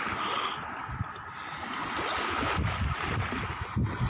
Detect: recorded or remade recorded